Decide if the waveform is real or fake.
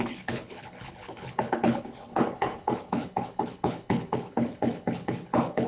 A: fake